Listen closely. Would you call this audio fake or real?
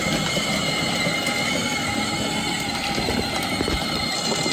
real